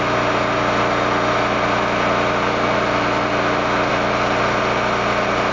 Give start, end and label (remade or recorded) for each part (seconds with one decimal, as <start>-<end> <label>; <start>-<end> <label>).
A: 0.0-5.5 recorded